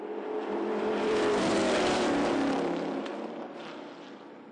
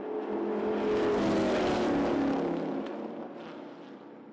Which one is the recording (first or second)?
second